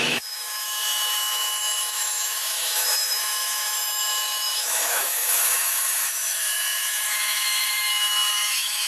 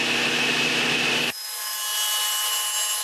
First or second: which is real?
second